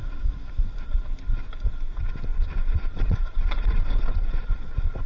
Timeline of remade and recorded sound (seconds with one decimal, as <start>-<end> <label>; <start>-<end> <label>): 0.0-2.3 recorded; 2.3-5.1 remade